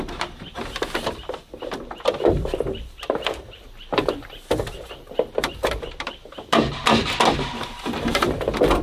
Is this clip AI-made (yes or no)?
no